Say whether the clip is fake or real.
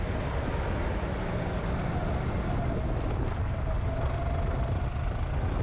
real